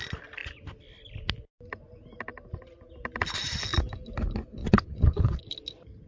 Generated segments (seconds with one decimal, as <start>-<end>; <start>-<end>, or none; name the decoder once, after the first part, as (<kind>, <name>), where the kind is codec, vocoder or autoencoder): 4.6-5.4 (vocoder, WaveNeXt)